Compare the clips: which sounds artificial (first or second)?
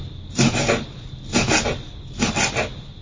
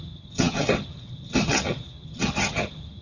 second